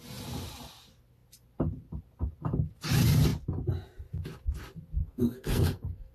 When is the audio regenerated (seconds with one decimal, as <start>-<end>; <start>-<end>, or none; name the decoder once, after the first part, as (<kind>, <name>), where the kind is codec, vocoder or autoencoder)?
5.0-6.1 (codec, SNAC)